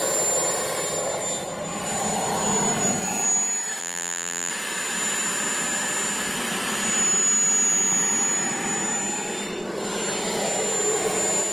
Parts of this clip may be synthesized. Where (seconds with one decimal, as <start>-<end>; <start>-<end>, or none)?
3.8-4.5